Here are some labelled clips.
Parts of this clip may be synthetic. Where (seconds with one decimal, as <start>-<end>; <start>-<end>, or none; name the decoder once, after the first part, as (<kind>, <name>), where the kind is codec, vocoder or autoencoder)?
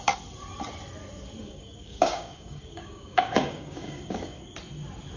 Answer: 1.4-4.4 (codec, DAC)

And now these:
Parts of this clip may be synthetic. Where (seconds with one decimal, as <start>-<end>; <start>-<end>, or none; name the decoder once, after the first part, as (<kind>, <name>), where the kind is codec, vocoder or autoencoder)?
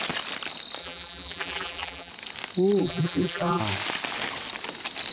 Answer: 0.8-2.1 (vocoder, BigVGAN v2); 2.8-3.6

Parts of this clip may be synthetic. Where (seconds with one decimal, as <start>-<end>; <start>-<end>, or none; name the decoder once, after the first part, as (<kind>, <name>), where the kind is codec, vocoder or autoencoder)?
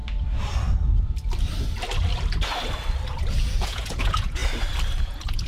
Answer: 3.3-4.4 (vocoder, Vocos); 5.0-5.5